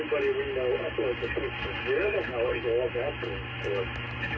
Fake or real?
real